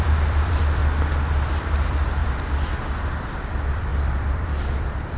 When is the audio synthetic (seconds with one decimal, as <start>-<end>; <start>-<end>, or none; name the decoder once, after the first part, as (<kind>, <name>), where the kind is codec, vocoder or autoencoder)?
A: 0.0-0.8 (vocoder, BigVGAN v2); 1.6-5.2